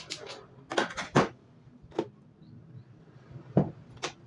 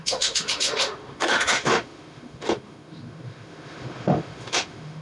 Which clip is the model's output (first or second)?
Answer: second